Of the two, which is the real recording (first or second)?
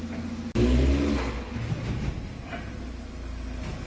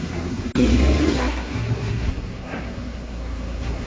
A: first